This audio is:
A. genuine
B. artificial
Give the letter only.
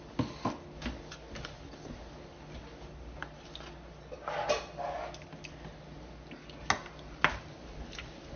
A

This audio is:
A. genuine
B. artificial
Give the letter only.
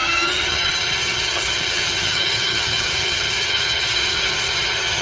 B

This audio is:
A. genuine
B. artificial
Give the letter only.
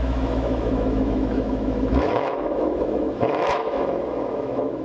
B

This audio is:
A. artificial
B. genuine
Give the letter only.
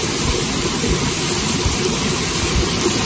B